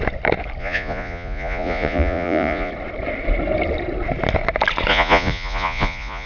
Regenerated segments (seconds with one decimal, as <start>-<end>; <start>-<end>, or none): 0.6-2.7; 4.9-6.3